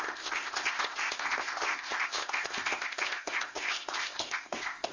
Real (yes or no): no